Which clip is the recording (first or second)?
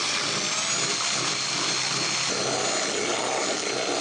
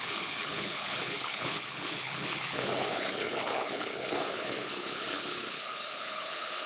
first